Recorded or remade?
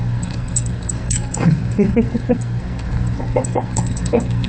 remade